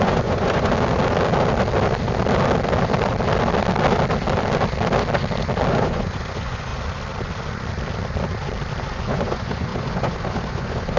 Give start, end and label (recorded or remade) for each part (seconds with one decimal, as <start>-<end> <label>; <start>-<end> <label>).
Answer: 0.0-0.7 remade; 0.7-5.7 recorded; 5.7-6.7 remade; 6.7-8.8 recorded; 8.8-11.0 remade